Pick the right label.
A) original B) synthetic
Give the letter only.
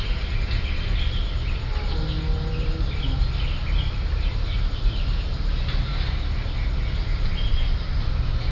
A